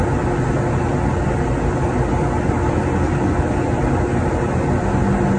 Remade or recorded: recorded